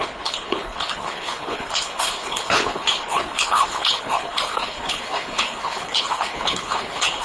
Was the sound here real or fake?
fake